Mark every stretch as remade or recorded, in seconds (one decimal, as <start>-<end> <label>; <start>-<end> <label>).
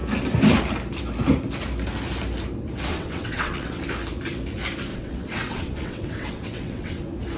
0.0-2.9 recorded; 2.9-3.8 remade; 3.8-4.9 recorded; 4.9-7.0 remade; 7.0-7.4 recorded